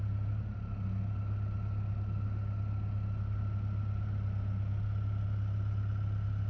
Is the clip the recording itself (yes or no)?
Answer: yes